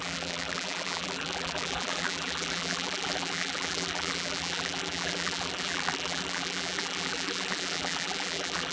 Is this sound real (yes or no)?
no